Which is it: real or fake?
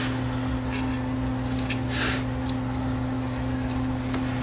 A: real